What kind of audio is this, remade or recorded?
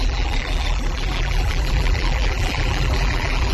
remade